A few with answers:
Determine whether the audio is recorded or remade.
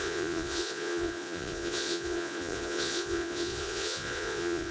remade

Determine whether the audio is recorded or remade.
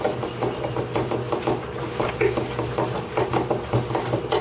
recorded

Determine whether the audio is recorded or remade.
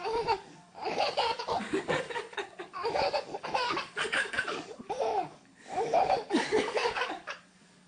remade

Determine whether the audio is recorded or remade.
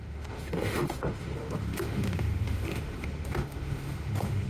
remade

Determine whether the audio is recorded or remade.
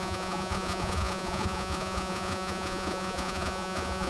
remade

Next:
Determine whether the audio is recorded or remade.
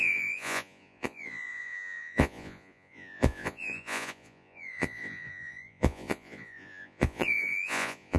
remade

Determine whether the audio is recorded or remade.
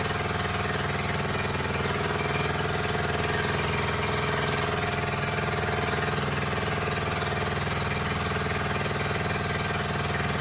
recorded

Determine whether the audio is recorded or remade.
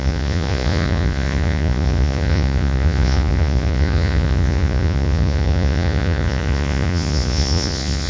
remade